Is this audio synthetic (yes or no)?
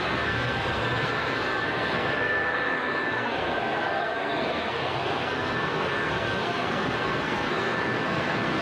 yes